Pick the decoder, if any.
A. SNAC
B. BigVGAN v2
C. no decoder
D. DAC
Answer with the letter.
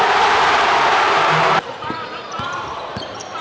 B